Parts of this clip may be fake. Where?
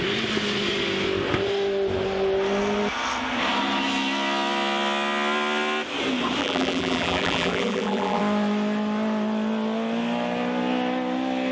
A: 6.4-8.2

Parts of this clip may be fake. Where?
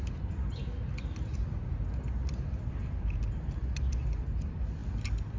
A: none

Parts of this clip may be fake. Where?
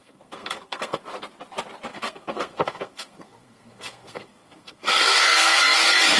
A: 0.0-1.0; 1.9-5.6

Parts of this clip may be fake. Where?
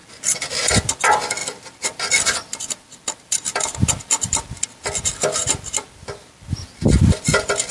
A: none